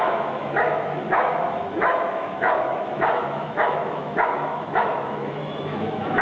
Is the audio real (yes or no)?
no